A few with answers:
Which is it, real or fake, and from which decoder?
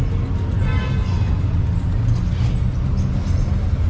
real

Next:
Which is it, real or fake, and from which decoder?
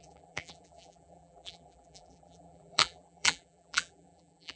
fake, vocoder, BigVGAN v2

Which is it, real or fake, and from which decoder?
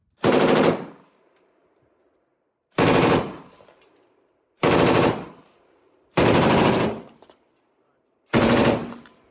fake, vocoder, BigVGAN v2